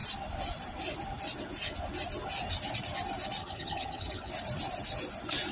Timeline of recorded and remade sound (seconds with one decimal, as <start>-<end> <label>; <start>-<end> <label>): 0.0-3.4 recorded; 3.4-4.3 remade; 4.3-5.5 recorded